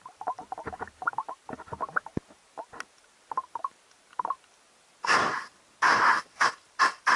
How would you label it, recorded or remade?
recorded